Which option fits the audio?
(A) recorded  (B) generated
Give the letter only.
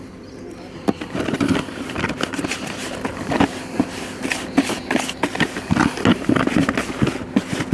A